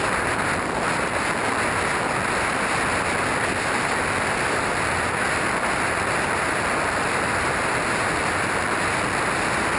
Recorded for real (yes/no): yes